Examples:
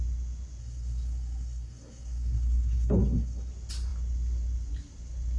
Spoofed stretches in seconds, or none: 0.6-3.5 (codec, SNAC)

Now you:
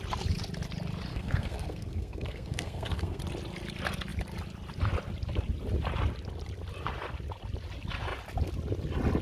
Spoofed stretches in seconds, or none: 1.1-3.2 (codec, SNAC)

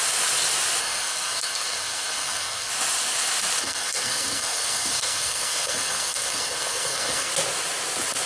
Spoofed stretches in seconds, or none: 0.8-2.7 (codec, SNAC); 3.6-7.3